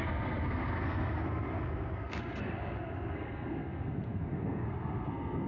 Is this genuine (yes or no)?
no